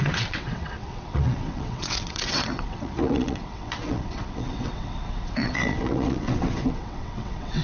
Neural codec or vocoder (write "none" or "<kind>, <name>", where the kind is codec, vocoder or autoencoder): vocoder, WaveNeXt